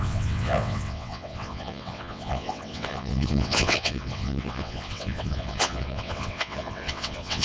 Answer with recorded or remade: remade